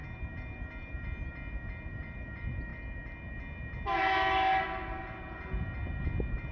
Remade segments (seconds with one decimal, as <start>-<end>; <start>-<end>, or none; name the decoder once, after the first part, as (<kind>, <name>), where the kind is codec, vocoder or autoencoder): none